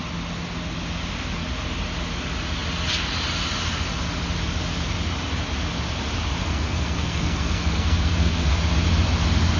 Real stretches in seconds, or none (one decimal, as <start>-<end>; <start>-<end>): 0.0-6.4; 8.6-9.6